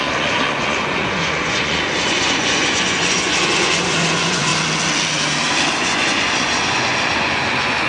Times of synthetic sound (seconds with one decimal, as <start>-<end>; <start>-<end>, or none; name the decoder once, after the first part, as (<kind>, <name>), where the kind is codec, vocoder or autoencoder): 0.0-4.5 (vocoder, Vocos); 5.7-7.9